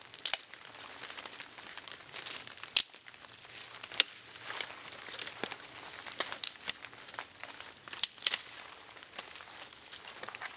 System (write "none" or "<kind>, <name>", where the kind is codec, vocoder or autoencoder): none